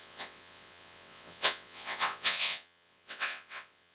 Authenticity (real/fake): fake